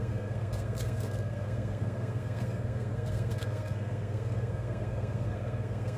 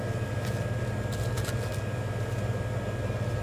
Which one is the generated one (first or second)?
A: first